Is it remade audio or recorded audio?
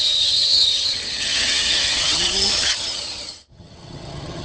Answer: remade